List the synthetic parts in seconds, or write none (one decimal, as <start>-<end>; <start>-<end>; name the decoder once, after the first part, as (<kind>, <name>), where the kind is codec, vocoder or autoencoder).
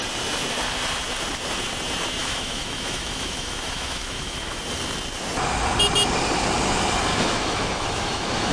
2.2-4.6 (autoencoder, DAC-VAE); 7.1-8.5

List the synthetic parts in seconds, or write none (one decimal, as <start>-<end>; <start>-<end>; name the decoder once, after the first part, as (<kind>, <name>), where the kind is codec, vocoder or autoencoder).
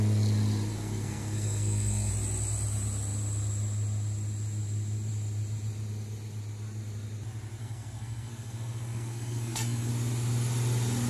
0.7-2.1 (codec, SNAC); 7.6-9.9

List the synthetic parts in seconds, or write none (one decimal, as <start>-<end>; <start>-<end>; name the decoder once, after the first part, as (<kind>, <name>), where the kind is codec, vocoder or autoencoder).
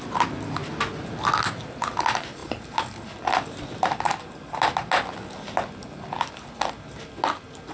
none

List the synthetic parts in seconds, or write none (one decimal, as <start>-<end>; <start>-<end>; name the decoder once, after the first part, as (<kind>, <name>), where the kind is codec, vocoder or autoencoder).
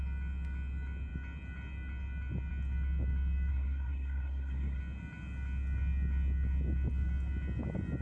3.5-4.8 (codec, SNAC)